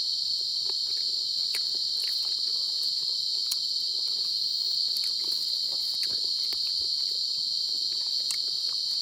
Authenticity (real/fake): real